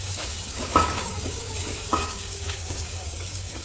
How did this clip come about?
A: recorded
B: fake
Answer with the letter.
B